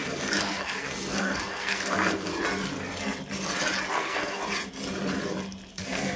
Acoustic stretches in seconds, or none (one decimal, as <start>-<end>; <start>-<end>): 2.3-3.9; 4.4-5.7

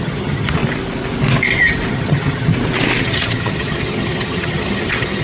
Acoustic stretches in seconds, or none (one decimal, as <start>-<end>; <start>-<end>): 0.6-1.9; 2.5-3.0